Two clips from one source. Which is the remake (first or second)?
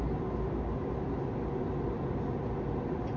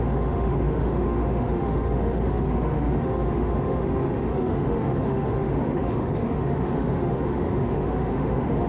second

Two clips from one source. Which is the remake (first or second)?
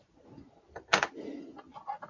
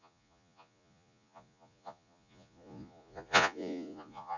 second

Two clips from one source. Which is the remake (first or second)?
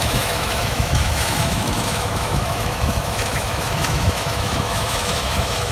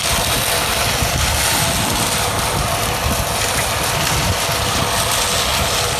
first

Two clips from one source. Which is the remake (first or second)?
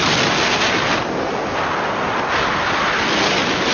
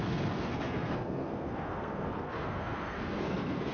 second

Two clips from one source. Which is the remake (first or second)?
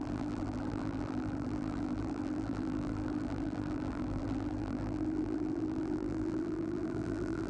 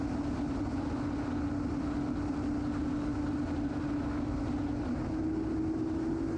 first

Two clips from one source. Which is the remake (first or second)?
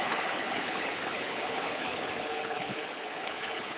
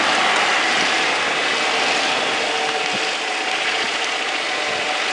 first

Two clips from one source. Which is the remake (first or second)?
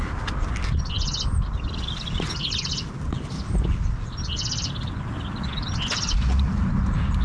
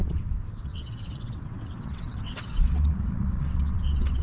second